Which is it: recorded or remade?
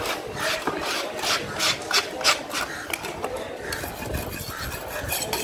recorded